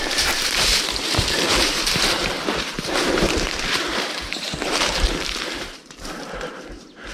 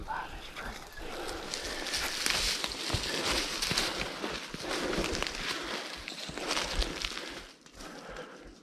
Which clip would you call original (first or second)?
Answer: second